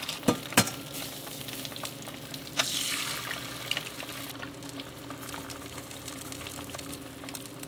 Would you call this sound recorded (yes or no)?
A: yes